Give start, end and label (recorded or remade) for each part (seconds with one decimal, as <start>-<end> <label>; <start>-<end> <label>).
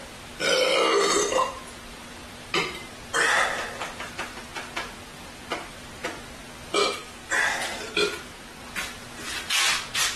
0.0-10.2 recorded